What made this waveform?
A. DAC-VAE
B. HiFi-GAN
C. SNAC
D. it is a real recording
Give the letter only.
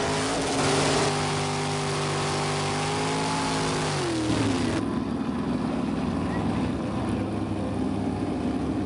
D